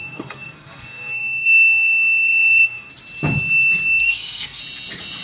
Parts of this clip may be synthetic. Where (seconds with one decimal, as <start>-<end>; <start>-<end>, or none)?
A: 0.0-2.9; 4.0-4.6